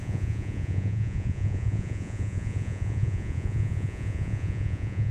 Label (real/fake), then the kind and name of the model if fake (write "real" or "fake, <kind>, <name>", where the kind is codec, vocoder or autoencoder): fake, vocoder, Vocos